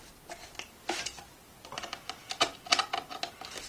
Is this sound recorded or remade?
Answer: recorded